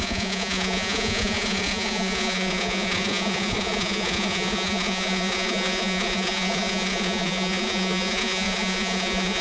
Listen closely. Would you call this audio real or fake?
fake